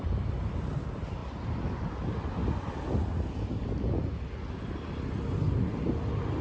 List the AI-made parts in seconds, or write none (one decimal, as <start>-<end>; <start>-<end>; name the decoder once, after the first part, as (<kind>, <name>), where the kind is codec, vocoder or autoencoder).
none